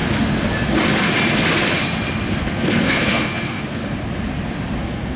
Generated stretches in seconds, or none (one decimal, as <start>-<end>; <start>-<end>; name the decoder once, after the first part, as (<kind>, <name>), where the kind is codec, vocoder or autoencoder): 2.5-3.8 (codec, SNAC); 4.8-5.2